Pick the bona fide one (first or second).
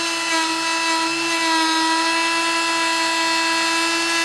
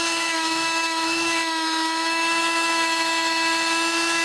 first